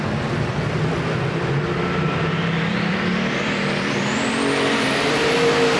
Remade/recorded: remade